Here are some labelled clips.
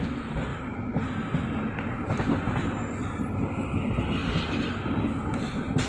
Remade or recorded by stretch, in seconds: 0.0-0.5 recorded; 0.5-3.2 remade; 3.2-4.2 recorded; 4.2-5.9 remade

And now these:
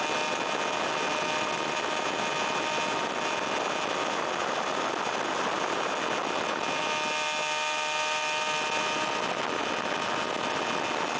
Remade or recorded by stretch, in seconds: 0.0-4.4 recorded; 4.4-5.8 remade; 5.8-11.2 recorded

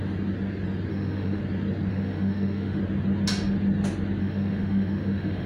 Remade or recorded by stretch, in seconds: 0.0-0.9 recorded; 0.9-1.4 remade; 1.4-1.9 recorded; 1.9-2.8 remade; 2.8-4.2 recorded; 4.2-5.5 remade

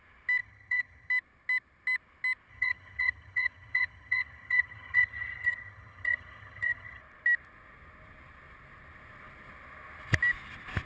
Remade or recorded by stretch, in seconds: 0.0-0.4 recorded; 0.4-1.1 remade; 1.1-2.5 recorded; 2.5-7.0 remade; 7.0-10.9 recorded

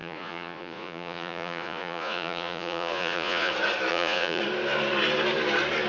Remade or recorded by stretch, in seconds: 0.0-3.5 remade; 3.5-3.9 recorded; 3.9-4.4 remade; 4.4-5.9 recorded